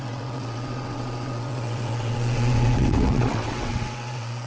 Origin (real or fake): fake